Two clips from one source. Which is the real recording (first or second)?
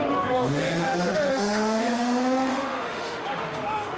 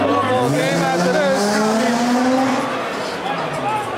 second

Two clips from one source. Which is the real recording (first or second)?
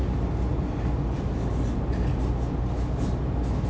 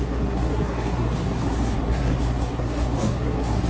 first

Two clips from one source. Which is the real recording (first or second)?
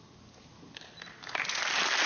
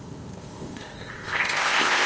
first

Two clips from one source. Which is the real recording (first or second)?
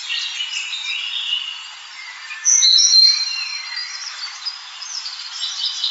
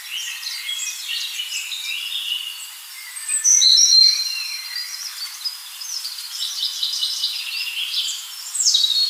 first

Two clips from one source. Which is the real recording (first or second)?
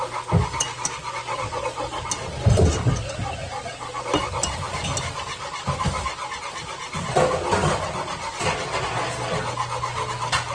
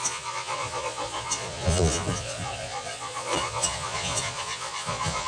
first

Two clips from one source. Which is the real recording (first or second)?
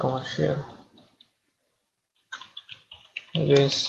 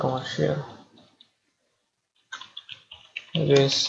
second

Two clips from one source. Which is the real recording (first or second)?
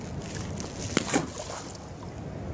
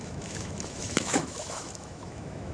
first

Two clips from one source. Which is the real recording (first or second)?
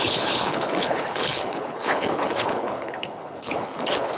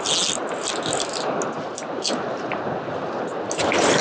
second